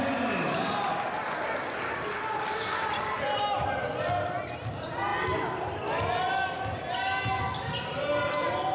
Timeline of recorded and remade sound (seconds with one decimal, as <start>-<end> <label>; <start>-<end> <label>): 0.0-8.7 recorded